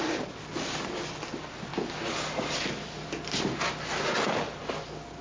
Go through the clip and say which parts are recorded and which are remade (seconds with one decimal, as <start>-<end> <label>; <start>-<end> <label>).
0.0-5.2 recorded